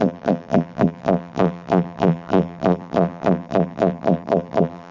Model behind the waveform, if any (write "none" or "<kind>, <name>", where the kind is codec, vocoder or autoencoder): vocoder, BigVGAN v2